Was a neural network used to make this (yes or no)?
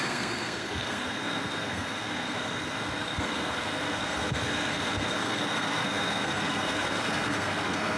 yes